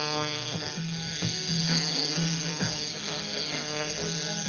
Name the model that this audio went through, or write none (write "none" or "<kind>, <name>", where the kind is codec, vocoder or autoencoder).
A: codec, SNAC